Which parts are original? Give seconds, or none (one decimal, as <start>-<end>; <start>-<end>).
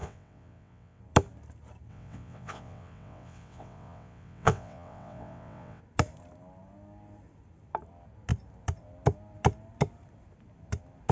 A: 1.0-1.9; 5.8-11.1